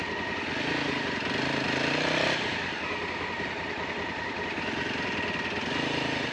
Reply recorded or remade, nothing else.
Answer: recorded